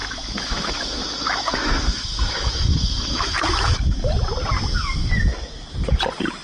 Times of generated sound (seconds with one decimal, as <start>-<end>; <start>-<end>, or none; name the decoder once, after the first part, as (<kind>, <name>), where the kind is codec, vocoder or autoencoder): 0.0-3.8 (autoencoder, DAC-VAE)